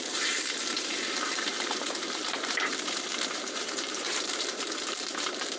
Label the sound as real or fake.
fake